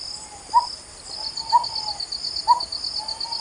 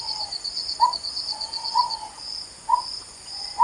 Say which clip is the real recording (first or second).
first